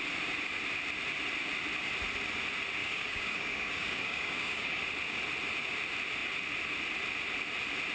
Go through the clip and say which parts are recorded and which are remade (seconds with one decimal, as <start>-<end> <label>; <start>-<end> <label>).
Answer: 0.0-2.8 recorded; 2.8-4.8 remade; 4.8-7.9 recorded